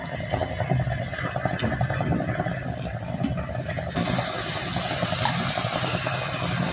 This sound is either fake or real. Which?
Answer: real